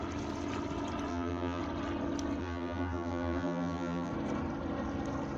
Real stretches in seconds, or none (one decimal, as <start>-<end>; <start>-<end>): 0.0-1.1; 1.6-2.4; 4.1-5.4